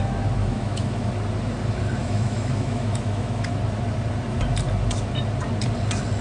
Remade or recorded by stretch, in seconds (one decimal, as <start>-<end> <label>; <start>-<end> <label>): 0.0-0.4 recorded; 0.4-1.1 remade; 1.1-2.0 recorded; 2.0-3.5 remade; 3.5-6.2 recorded